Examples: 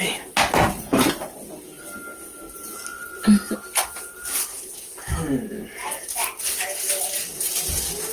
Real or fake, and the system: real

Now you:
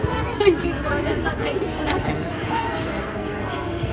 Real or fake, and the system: fake, codec, SNAC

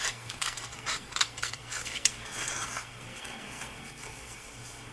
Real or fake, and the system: fake, codec, SNAC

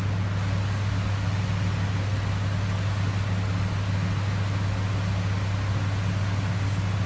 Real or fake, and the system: real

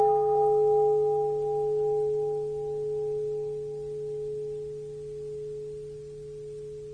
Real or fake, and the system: real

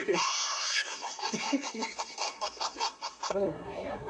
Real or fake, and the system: fake, codec, SNAC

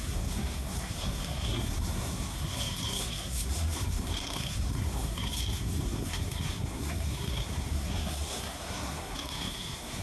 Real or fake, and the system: fake, codec, SNAC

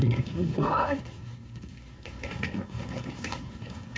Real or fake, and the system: fake, codec, SNAC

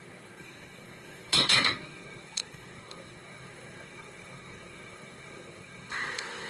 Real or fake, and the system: fake, codec, SNAC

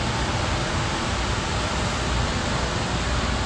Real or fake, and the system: real